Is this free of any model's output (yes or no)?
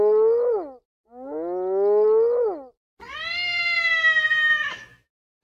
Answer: yes